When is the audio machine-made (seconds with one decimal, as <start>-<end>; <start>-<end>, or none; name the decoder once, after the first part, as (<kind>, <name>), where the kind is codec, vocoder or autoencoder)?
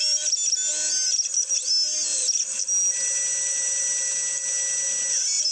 none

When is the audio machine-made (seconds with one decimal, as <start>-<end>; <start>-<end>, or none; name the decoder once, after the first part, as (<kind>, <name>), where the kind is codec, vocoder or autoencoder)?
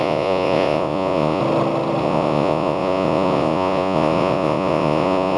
0.0-1.4 (vocoder, Vocos); 2.0-5.4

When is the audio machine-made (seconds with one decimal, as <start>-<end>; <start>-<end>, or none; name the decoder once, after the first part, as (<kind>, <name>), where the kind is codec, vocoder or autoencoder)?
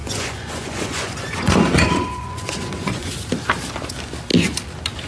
0.0-3.1 (vocoder, Vocos)